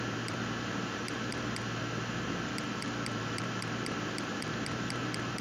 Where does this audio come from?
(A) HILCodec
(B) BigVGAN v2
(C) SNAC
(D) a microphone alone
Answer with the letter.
B